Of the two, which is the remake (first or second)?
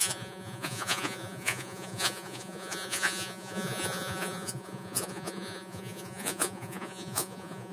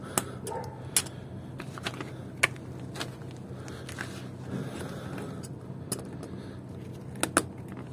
first